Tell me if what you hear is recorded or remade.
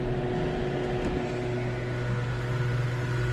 recorded